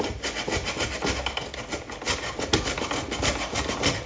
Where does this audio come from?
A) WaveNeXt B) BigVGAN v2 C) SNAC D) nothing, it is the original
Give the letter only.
D